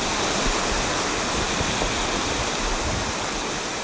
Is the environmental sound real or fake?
real